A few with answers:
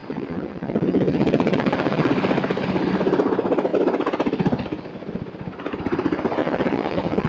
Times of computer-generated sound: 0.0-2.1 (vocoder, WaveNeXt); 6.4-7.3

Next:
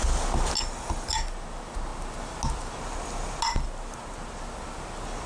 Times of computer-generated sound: none

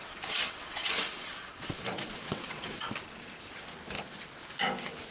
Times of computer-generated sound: 0.0-2.9 (vocoder, WaveNeXt)

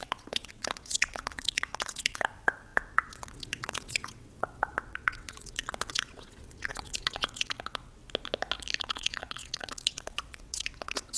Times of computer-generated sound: 0.0-8.0 (vocoder, WaveNeXt); 8.8-11.2

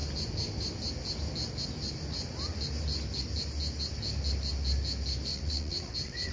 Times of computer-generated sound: 5.3-6.3 (vocoder, WaveNeXt)

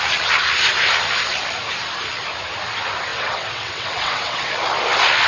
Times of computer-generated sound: 3.1-4.5 (vocoder, WaveNeXt)

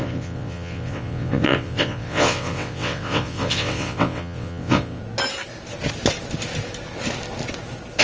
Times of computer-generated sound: 0.0-5.0 (vocoder, WaveNeXt)

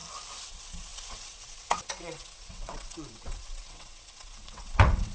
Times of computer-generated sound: 0.5-5.1 (vocoder, WaveNeXt)